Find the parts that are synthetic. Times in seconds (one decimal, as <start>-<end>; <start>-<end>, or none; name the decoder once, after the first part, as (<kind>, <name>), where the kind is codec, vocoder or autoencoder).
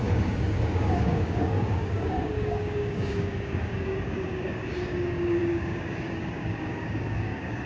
0.0-7.7 (codec, DAC)